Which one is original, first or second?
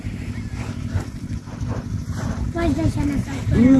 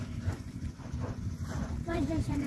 first